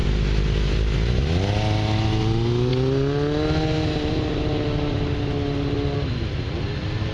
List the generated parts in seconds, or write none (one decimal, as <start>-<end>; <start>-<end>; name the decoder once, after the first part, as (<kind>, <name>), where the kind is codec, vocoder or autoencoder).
none